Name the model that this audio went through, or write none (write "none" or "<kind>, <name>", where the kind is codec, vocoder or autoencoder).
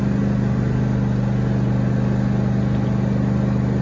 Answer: none